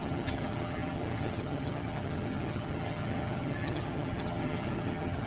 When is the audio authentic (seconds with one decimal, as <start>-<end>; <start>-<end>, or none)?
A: none